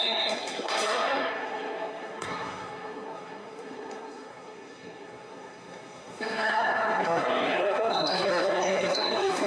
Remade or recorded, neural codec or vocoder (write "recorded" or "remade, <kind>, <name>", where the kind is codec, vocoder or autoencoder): remade, codec, SNAC